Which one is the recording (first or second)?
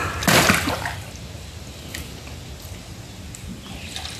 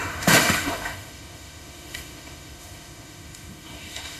first